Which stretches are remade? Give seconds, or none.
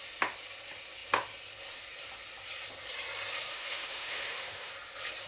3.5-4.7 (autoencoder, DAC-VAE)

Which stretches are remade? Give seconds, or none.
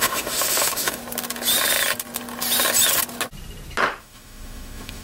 0.0-1.0 (autoencoder, DAC-VAE); 4.0-5.0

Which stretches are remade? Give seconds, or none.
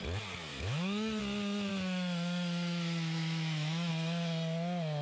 0.5-1.2 (autoencoder, DAC-VAE); 1.7-3.9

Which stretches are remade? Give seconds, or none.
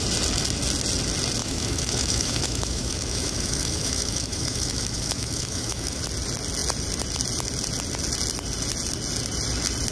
1.4-6.0 (autoencoder, DAC-VAE)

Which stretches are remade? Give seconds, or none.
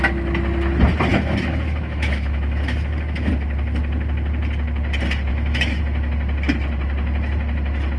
1.1-3.3 (autoencoder, DAC-VAE); 5.3-5.8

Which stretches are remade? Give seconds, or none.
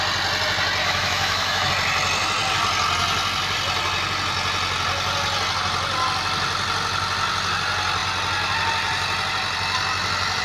0.8-1.7 (autoencoder, DAC-VAE)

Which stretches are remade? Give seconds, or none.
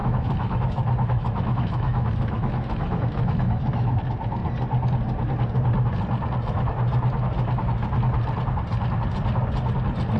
0.0-4.0 (autoencoder, DAC-VAE)